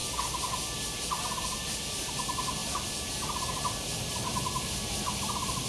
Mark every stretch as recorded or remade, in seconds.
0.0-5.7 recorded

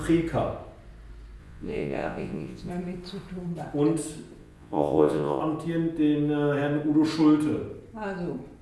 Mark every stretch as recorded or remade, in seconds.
0.0-1.4 recorded; 1.4-2.7 remade; 2.7-4.4 recorded; 4.4-5.4 remade; 5.4-8.6 recorded

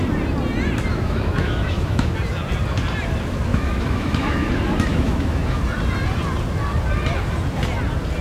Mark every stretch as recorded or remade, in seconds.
0.0-0.9 recorded; 0.9-2.1 remade; 2.1-3.5 recorded; 3.5-4.5 remade; 4.5-4.9 recorded; 4.9-5.6 remade; 5.6-8.2 recorded

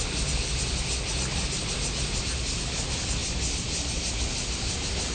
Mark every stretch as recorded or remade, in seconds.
0.0-5.1 recorded

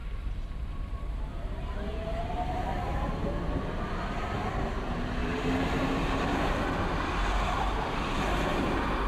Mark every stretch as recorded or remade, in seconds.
0.0-3.1 remade; 3.1-5.2 recorded; 5.2-6.5 remade; 6.5-9.1 recorded

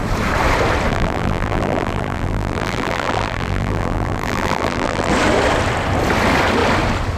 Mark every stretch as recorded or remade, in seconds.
0.0-0.9 recorded; 0.9-5.1 remade; 5.1-7.2 recorded

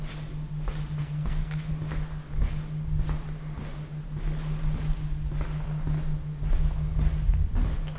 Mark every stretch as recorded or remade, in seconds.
0.0-1.0 recorded; 1.0-1.7 remade; 1.7-8.0 recorded